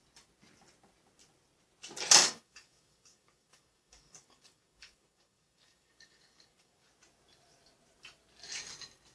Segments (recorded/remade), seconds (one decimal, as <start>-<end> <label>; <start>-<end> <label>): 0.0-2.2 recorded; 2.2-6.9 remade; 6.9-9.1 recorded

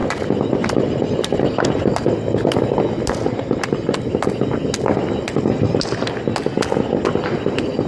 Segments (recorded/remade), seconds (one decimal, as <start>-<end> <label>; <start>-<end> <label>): 0.0-7.9 recorded

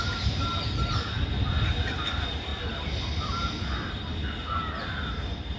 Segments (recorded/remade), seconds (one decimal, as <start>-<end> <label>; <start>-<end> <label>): 0.0-0.5 remade; 0.5-1.5 recorded; 1.5-2.5 remade; 2.5-5.1 recorded; 5.1-5.6 remade

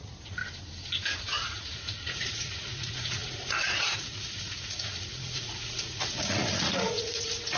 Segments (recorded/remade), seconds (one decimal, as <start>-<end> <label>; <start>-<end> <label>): 0.0-0.4 remade; 0.4-1.2 recorded; 1.2-7.6 remade

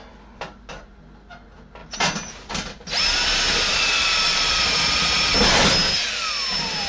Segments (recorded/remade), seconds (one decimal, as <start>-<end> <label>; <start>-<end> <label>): 0.0-1.8 recorded; 1.8-2.5 remade; 2.5-3.7 recorded; 3.7-5.2 remade; 5.2-6.9 recorded